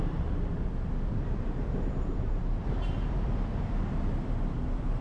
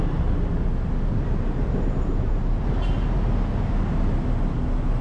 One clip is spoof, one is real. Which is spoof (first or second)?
first